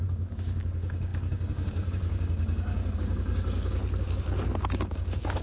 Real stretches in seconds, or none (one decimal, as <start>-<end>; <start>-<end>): 3.8-4.6